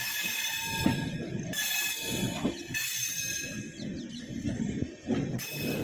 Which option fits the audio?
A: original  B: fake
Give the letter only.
A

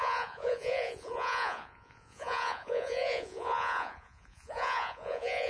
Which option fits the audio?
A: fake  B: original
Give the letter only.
A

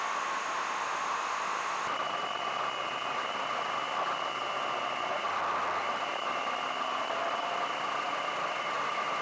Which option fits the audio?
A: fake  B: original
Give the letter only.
B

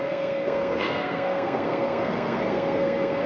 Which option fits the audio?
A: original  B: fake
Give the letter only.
B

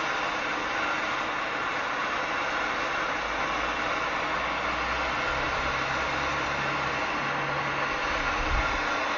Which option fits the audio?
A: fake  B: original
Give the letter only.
B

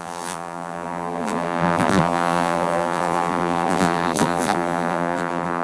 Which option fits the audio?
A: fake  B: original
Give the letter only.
A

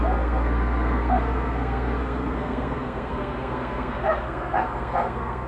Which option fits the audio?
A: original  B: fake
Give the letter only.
B